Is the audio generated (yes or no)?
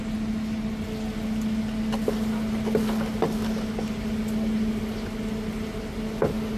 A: no